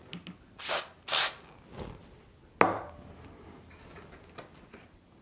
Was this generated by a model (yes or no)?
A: no